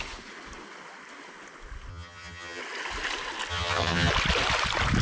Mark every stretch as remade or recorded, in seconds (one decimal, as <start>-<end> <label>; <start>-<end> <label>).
0.0-1.9 recorded; 1.9-2.6 remade; 2.6-3.5 recorded; 3.5-4.1 remade; 4.1-5.0 recorded